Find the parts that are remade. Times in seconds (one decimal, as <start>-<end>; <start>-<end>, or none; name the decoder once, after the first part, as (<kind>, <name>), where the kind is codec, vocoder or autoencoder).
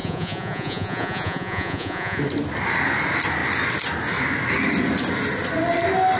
0.0-2.2 (vocoder, Vocos)